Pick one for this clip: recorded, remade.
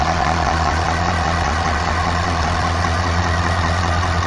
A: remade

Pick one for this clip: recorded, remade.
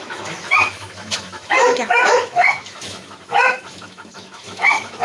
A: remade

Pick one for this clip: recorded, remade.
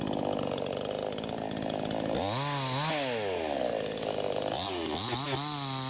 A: recorded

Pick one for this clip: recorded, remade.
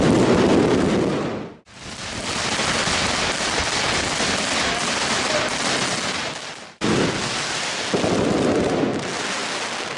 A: recorded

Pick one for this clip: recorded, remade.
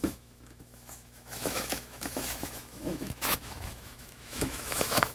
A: remade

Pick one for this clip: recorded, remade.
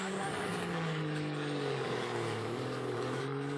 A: remade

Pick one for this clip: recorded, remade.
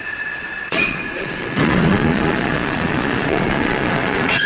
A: remade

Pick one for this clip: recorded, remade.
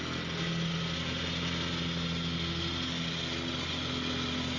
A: recorded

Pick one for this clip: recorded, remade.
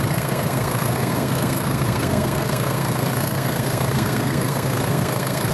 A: remade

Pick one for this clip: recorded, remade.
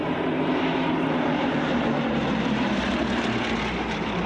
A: remade